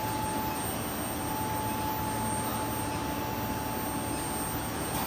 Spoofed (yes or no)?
no